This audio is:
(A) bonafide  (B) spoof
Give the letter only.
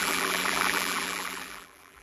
B